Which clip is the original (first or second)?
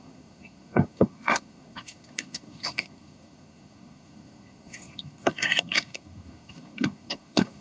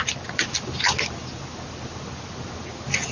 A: second